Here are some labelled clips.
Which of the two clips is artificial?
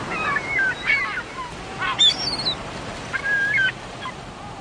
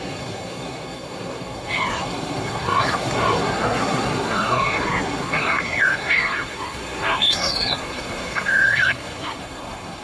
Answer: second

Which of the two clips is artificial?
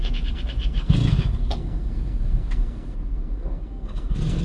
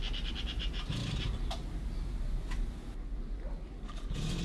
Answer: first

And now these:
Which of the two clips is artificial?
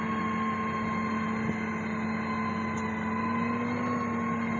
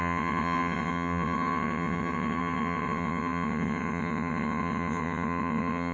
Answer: second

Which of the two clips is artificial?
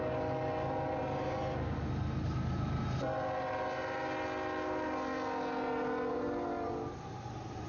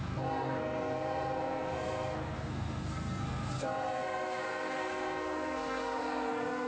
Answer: second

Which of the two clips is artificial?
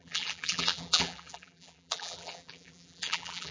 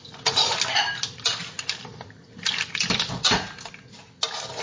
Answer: first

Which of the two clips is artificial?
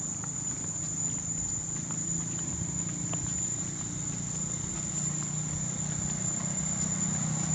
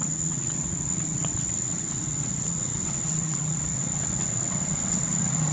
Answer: second